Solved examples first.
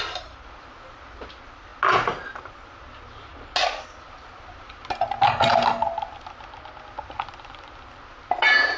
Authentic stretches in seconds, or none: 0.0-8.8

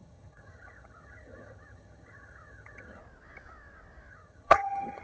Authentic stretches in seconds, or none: 3.0-4.1